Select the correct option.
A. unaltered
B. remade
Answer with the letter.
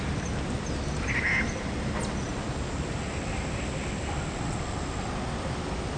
A